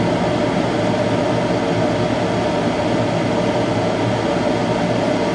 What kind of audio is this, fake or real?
real